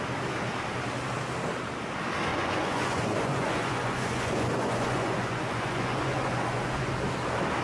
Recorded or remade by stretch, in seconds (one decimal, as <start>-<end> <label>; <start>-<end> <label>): 0.0-2.3 recorded; 2.3-6.9 remade; 6.9-7.6 recorded